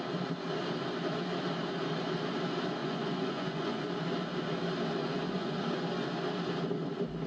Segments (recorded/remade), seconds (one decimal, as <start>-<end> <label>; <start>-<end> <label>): 0.0-2.8 recorded; 2.8-3.9 remade; 3.9-5.0 recorded; 5.0-5.6 remade; 5.6-7.3 recorded